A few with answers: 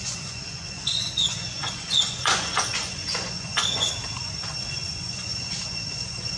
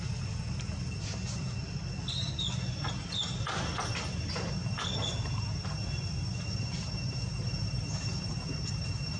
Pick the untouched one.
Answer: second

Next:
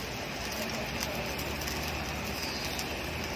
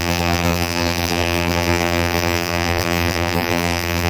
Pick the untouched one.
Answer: first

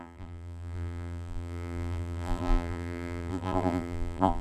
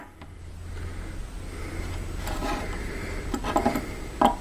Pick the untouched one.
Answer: second